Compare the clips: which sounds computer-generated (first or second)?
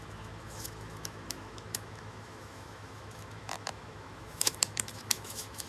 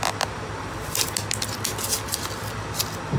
first